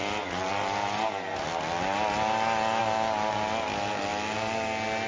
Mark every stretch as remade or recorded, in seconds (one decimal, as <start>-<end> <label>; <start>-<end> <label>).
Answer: 0.0-5.1 recorded